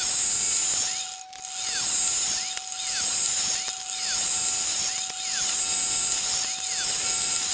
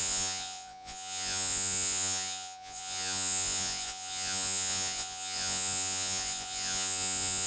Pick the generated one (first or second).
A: second